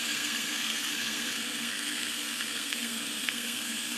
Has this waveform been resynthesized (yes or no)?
yes